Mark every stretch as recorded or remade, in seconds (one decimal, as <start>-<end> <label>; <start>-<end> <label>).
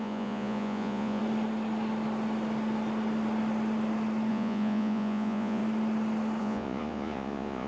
0.0-1.2 remade; 1.2-4.3 recorded; 4.3-5.6 remade; 5.6-6.4 recorded; 6.4-7.7 remade